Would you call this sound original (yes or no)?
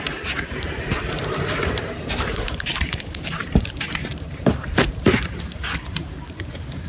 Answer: no